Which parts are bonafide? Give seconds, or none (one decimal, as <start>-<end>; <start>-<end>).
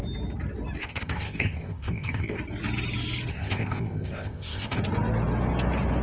0.0-0.8; 2.4-3.3; 4.8-6.0